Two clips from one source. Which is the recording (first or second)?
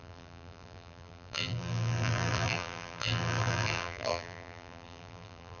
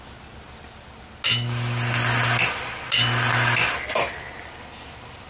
second